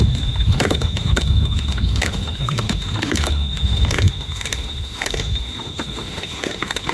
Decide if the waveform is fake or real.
fake